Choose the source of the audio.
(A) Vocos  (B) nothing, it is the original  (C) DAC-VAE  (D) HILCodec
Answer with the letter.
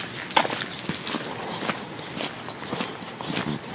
B